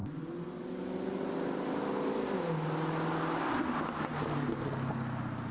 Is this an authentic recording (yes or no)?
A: yes